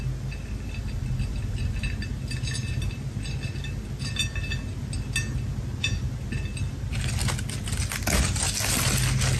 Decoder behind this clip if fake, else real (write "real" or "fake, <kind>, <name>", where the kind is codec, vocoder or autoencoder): real